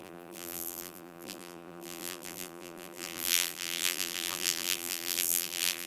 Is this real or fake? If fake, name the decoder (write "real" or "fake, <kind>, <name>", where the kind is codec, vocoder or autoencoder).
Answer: fake, vocoder, BigVGAN v2